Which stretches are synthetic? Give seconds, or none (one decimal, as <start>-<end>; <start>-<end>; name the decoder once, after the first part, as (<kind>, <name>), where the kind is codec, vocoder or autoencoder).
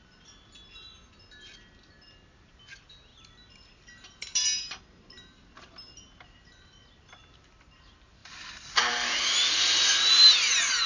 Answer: none